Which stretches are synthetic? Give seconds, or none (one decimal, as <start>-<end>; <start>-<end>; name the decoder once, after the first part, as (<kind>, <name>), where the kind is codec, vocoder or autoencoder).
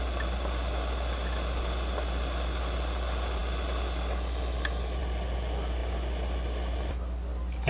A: none